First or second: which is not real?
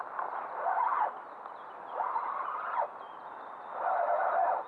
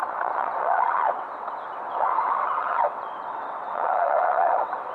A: second